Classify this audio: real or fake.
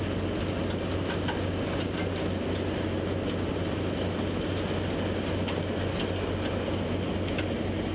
real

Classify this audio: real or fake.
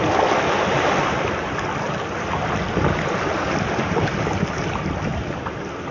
real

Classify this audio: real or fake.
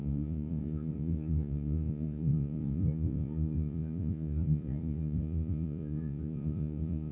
fake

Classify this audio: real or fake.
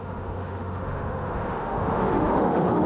fake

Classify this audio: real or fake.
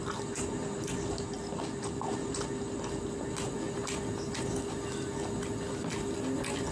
real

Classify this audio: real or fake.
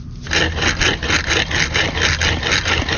real